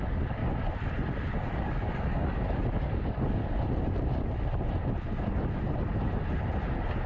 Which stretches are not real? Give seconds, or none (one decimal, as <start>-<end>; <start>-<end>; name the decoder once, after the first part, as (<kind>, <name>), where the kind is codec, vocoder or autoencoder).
0.0-0.4 (codec, DAC); 1.5-3.4